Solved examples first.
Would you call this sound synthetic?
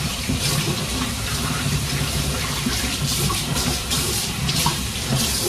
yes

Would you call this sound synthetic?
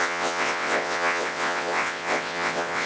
yes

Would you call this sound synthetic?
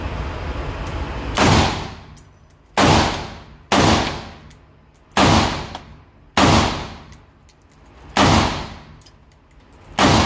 no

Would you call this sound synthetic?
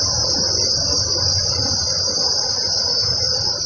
no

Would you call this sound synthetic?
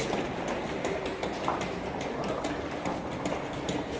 no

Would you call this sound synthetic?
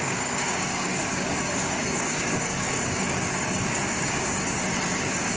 yes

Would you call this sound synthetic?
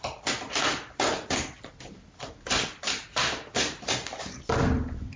yes